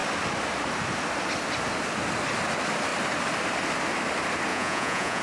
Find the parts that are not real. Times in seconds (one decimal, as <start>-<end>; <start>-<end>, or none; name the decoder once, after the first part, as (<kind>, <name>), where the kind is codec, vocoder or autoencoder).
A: 4.5-5.2 (vocoder, Vocos)